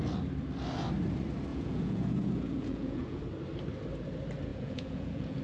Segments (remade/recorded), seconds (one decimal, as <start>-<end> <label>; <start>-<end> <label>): 0.0-1.5 recorded; 1.5-3.2 remade; 3.2-4.5 recorded; 4.5-5.4 remade